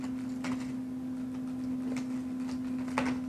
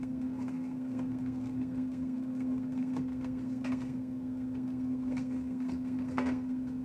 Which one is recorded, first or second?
first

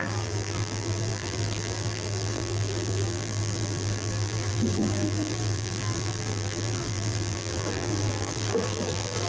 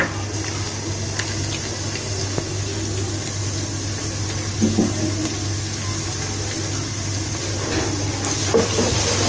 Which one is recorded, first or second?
second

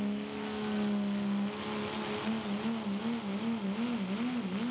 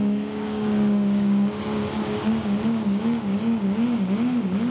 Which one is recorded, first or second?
first